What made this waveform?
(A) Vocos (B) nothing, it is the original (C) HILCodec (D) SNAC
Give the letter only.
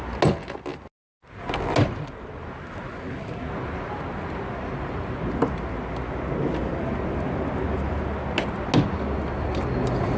B